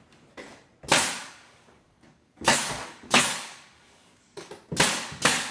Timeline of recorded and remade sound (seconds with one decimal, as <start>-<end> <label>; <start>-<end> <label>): 0.0-1.2 recorded; 1.2-4.5 remade; 4.5-5.5 recorded